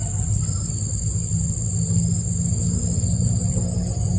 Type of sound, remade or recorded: recorded